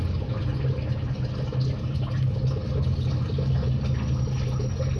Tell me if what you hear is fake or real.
real